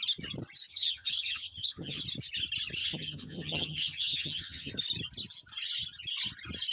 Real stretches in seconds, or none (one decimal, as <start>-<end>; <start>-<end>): 0.0-0.7; 2.0-2.8; 4.7-6.7